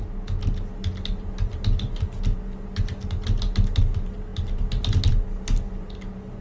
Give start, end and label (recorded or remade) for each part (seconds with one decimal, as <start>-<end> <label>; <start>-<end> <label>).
0.0-6.4 recorded